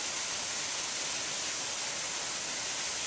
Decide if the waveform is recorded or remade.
recorded